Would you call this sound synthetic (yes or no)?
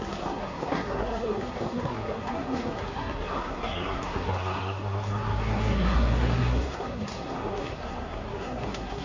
yes